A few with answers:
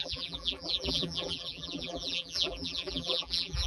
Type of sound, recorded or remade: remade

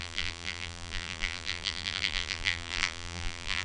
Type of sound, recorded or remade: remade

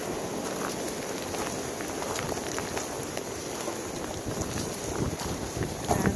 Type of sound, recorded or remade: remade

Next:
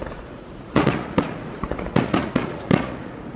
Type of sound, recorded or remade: remade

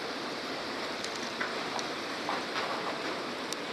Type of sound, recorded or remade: remade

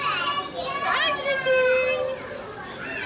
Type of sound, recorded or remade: recorded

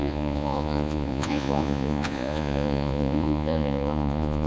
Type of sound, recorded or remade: remade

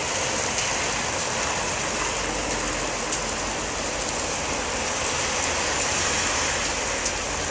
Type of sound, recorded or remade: recorded